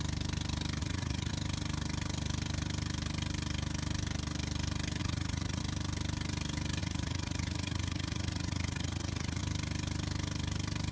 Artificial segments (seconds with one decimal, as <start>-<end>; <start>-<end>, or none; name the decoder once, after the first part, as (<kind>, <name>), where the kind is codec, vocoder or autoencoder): 0.8-1.3 (vocoder, Vocos); 5.0-5.6; 6.8-9.4